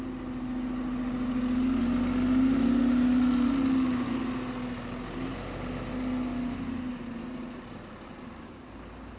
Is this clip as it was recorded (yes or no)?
yes